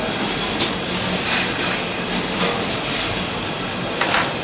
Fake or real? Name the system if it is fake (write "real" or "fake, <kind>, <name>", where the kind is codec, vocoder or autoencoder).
real